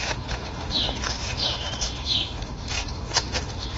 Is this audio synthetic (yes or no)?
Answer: yes